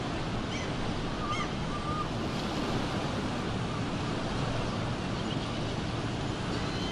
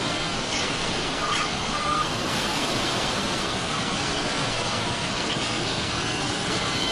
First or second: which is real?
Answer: first